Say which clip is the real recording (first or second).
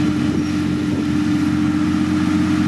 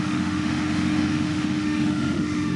first